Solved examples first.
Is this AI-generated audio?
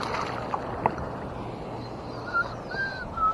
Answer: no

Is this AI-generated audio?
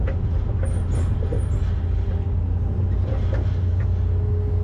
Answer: no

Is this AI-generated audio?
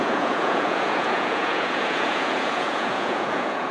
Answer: yes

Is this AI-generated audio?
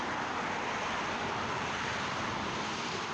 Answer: yes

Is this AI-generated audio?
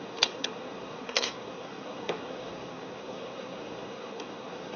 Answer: yes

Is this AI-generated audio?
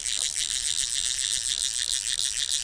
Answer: no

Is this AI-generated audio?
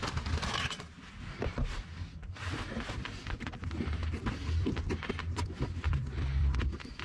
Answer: yes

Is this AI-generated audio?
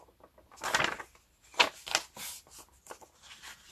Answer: no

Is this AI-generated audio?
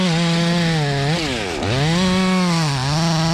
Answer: no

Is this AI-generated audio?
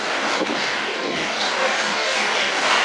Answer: yes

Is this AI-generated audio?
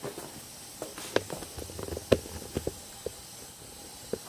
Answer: no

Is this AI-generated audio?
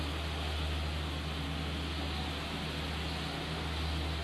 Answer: no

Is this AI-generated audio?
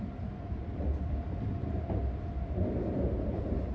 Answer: no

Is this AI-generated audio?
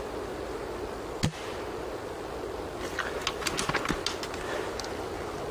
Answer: no